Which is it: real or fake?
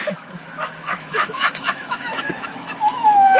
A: fake